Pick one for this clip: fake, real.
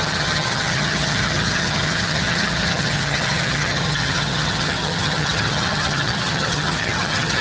fake